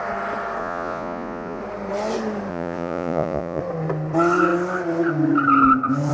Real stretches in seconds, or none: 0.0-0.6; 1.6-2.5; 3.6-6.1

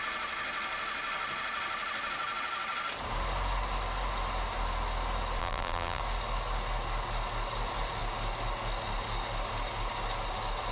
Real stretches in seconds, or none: 0.0-5.4; 6.0-10.7

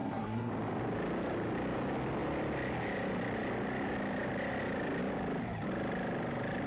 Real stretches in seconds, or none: 0.5-6.7

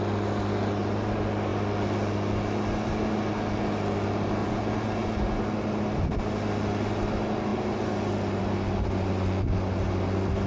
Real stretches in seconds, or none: 0.0-4.4; 5.4-10.5

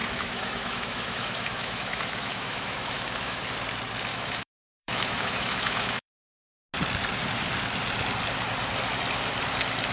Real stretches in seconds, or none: 3.5-4.1; 6.2-9.9

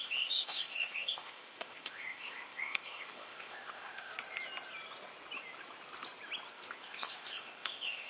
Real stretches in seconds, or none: 4.1-6.5

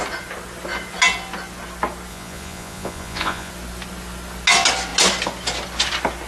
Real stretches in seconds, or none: 0.0-2.1; 3.5-6.3